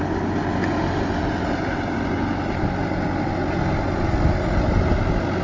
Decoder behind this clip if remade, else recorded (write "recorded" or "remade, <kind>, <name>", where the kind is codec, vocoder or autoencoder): recorded